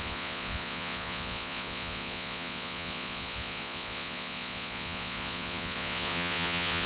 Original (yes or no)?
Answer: no